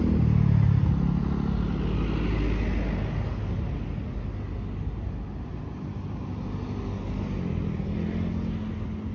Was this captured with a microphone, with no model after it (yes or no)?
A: yes